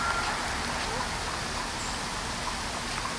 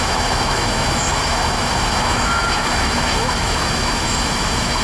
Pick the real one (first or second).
first